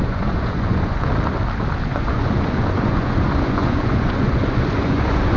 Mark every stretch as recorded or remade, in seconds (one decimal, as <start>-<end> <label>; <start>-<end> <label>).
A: 0.0-1.1 remade; 1.1-1.9 recorded; 1.9-5.4 remade